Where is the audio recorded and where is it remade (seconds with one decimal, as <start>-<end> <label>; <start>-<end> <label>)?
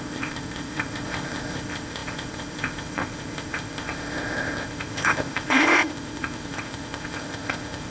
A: 0.0-7.9 remade